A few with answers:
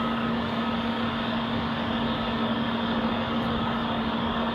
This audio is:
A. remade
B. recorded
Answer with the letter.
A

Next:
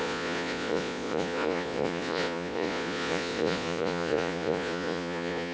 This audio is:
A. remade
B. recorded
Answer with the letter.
A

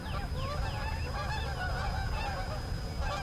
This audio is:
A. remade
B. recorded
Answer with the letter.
B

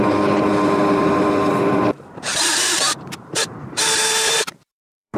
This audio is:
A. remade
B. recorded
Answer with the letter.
A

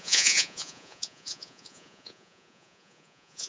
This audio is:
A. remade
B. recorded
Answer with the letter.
A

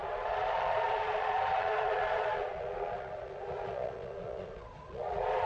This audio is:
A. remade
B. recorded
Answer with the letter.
A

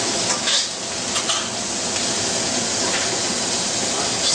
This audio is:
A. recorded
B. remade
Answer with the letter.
A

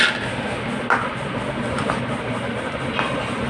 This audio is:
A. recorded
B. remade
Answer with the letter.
A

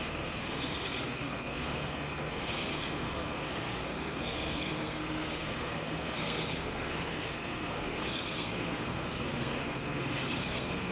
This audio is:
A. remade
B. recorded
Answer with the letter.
A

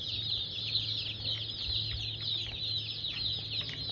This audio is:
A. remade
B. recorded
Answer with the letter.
B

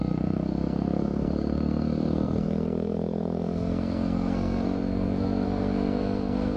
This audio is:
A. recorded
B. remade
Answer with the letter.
B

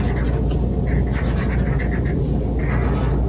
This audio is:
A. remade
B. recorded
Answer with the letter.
B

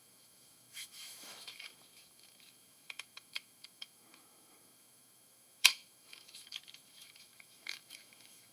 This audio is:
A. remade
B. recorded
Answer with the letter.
A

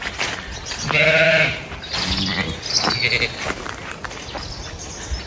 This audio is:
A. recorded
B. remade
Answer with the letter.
A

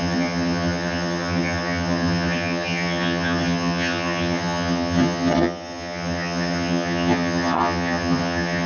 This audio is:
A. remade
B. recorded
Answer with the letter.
A